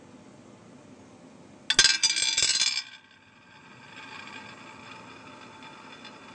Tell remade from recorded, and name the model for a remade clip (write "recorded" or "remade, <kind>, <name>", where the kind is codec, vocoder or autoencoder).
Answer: recorded